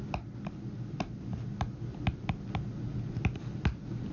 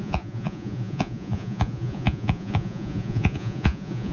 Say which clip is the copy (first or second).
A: second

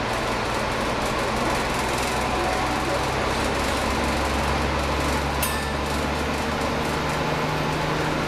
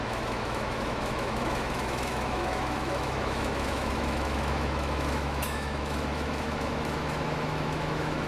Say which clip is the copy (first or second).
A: second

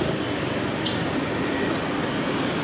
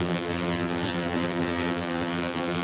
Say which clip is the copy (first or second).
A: second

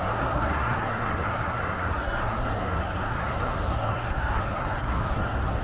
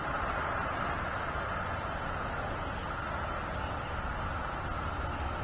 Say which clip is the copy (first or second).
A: first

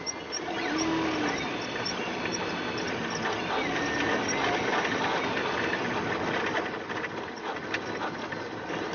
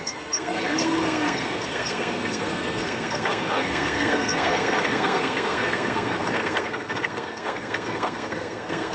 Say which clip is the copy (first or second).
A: second